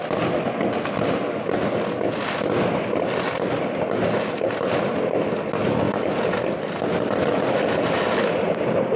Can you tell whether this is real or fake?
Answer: real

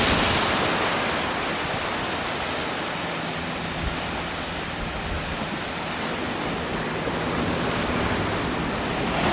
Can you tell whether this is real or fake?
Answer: real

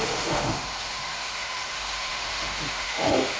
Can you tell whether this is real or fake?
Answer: fake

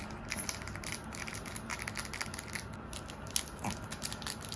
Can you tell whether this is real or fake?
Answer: real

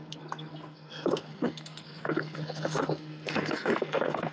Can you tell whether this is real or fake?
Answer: fake